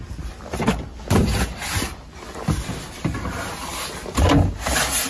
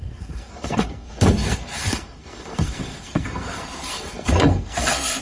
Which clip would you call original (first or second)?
first